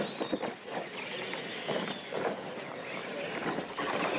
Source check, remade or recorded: recorded